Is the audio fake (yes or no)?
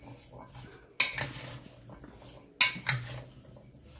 no